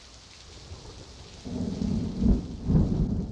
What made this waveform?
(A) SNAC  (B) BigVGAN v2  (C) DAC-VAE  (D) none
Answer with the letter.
D